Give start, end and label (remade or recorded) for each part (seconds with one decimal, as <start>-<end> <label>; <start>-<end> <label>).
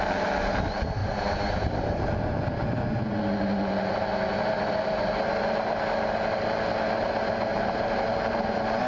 0.0-1.0 recorded; 1.0-2.1 remade; 2.1-7.5 recorded; 7.5-8.0 remade; 8.0-8.9 recorded